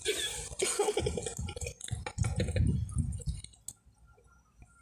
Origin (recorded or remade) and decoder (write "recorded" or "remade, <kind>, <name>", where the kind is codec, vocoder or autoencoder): recorded